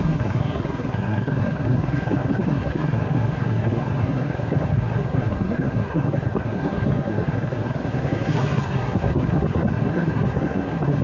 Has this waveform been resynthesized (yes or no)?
yes